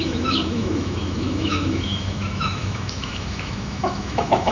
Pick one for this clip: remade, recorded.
remade